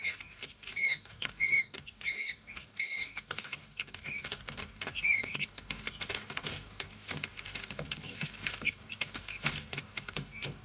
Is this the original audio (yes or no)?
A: no